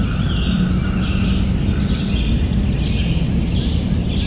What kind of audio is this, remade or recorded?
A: recorded